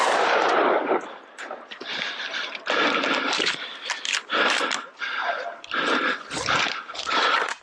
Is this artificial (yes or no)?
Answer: no